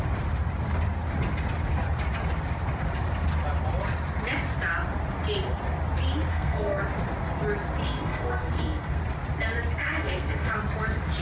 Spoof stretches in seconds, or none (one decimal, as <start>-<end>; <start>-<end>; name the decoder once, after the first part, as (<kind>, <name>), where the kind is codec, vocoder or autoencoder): 6.3-6.8 (codec, SNAC); 7.8-9.0; 9.8-10.5